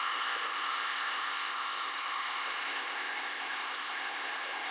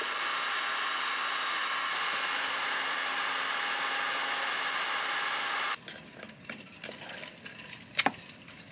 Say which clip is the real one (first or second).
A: second